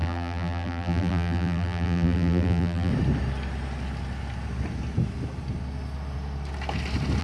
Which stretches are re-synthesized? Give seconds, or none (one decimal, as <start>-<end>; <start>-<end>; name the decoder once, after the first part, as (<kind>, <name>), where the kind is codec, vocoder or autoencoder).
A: 0.0-2.9 (vocoder, BigVGAN v2)